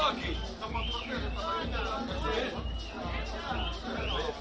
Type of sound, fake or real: real